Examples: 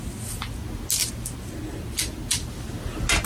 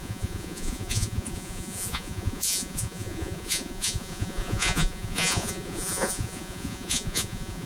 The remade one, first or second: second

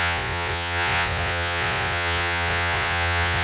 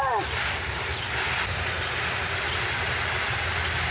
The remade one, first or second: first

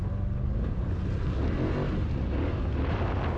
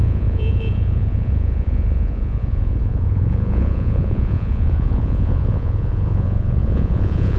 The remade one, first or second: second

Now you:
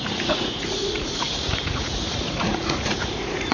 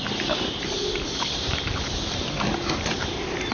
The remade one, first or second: first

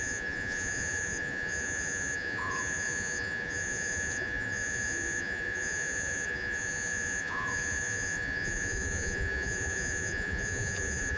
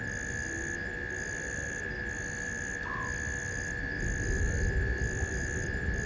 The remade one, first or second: first